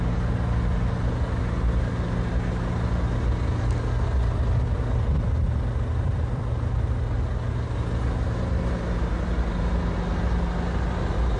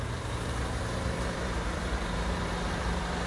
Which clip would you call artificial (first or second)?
second